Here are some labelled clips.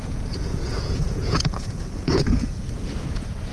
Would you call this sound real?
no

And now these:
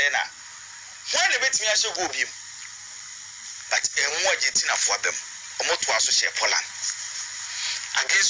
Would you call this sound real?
yes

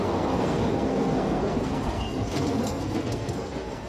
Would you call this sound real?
no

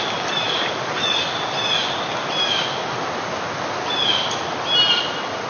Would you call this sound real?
yes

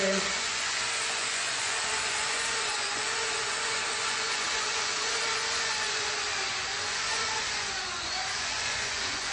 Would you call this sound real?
no